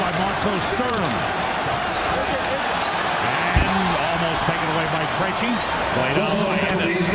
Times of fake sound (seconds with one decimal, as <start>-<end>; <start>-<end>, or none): 0.0-2.2; 5.4-6.0